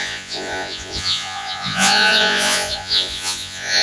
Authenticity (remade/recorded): remade